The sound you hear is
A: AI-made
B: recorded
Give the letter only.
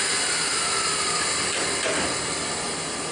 B